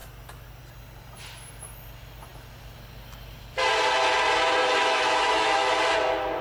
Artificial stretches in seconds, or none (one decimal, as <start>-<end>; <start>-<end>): 4.6-5.8

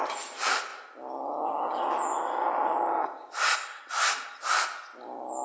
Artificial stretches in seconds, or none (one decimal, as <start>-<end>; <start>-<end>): none

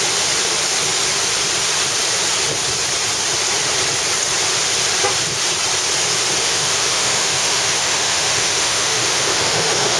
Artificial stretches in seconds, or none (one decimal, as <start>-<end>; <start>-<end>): 6.4-10.0

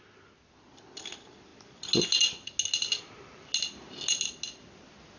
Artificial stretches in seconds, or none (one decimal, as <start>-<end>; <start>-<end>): none

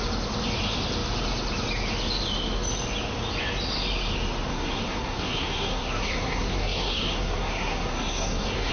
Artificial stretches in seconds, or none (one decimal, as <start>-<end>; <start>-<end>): 4.5-8.7

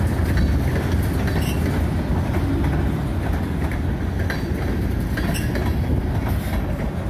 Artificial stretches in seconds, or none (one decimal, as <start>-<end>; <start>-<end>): 3.1-4.0

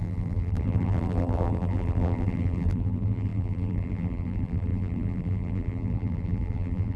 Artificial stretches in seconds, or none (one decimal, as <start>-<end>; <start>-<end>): 0.0-7.0